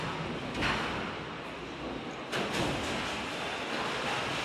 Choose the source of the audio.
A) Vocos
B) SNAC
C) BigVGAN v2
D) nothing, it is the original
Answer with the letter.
D